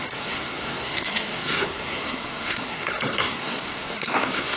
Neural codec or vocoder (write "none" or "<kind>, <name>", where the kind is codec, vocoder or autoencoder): codec, SNAC